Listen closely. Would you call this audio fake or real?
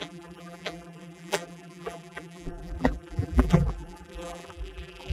fake